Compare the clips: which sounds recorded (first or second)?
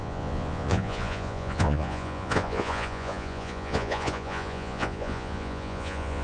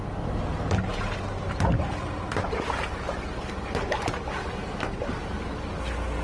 second